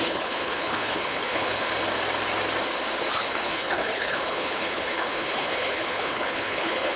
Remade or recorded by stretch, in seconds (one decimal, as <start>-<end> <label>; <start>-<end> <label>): 0.0-1.7 remade; 1.7-3.2 recorded; 3.2-7.0 remade